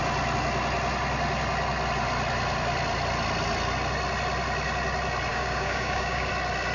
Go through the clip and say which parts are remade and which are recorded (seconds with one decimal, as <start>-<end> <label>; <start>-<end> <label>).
0.0-5.3 recorded; 5.3-6.3 remade; 6.3-6.7 recorded